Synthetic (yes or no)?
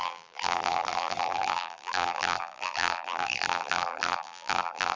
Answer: yes